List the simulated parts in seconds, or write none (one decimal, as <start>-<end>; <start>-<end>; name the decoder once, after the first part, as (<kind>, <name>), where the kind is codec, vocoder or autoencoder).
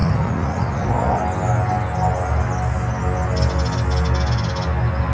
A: 0.0-1.2 (vocoder, Vocos)